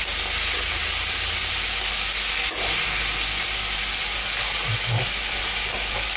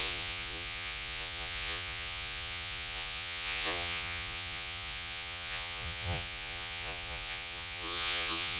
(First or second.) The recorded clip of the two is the first